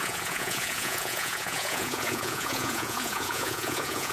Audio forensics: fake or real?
fake